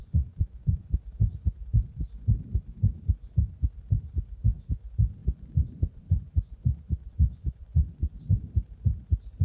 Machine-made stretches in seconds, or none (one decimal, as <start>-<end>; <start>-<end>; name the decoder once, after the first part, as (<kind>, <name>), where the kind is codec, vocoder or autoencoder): 0.0-1.0 (vocoder, Vocos); 5.2-8.1